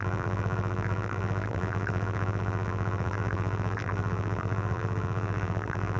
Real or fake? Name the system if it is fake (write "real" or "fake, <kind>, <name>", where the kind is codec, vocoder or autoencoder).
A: fake, vocoder, BigVGAN v2